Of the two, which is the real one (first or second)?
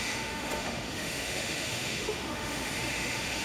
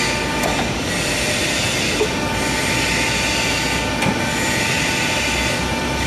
second